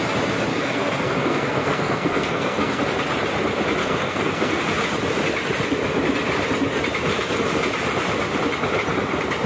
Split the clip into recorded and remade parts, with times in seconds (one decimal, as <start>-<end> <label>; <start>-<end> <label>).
0.0-0.5 recorded; 0.5-2.8 remade; 2.8-3.8 recorded; 3.8-4.6 remade; 4.6-9.5 recorded